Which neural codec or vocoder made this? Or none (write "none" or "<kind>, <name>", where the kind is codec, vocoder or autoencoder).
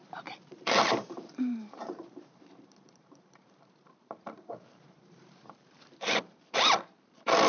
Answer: vocoder, BigVGAN v2